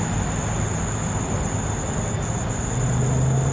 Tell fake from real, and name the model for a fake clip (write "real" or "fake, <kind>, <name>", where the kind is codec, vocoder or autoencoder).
real